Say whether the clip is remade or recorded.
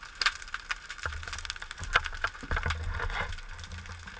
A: recorded